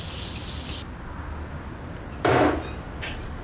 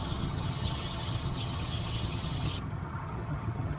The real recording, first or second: first